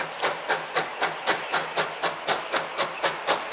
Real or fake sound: real